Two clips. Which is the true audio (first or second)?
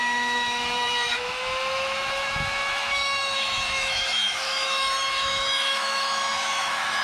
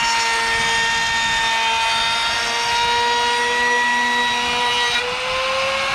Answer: second